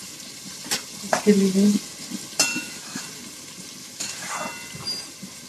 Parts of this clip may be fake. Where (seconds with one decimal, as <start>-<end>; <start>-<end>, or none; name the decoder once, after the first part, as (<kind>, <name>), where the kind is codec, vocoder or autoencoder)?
2.5-3.0 (autoencoder, DAC-VAE); 3.8-4.3